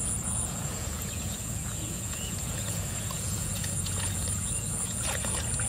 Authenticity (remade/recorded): remade